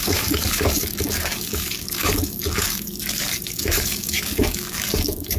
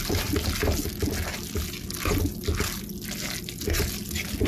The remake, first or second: first